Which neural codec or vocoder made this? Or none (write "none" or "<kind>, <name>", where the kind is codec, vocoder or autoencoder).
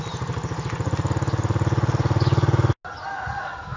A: none